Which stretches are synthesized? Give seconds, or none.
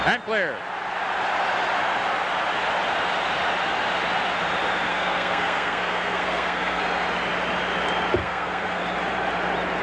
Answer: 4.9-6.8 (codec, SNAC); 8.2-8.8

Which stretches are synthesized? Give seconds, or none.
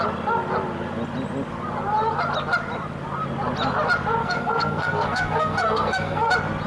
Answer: 4.2-6.3 (codec, SNAC)